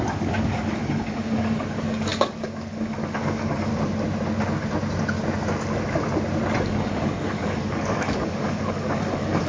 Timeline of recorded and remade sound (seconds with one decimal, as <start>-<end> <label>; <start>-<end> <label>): 0.0-3.7 remade; 3.7-6.6 recorded; 6.6-9.5 remade